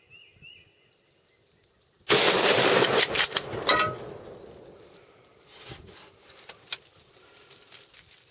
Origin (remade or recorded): recorded